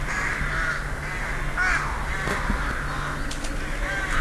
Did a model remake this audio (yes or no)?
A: no